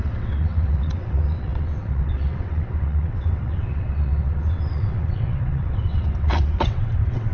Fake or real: fake